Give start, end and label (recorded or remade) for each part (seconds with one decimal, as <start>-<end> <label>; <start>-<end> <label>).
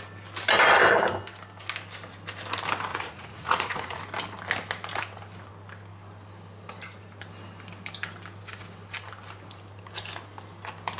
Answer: 0.0-2.9 recorded; 2.9-4.0 remade; 4.0-11.0 recorded